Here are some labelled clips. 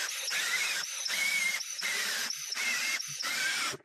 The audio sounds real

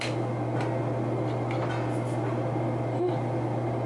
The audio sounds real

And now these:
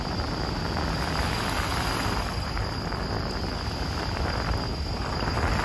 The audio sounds real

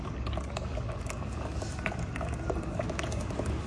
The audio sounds fake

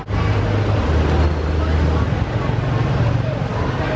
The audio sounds real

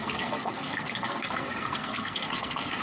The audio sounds fake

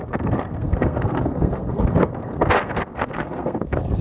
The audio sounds fake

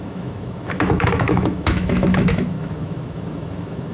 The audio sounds fake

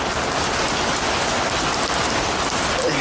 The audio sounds real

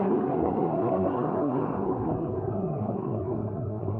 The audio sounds fake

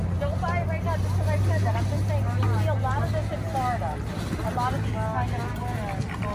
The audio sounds real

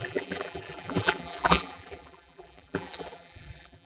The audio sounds fake